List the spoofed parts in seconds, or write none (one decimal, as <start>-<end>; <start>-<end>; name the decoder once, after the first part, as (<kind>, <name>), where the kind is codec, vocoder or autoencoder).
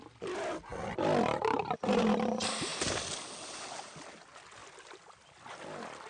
none